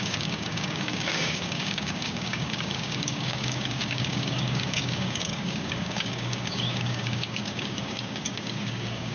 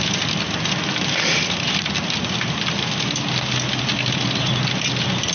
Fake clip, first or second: first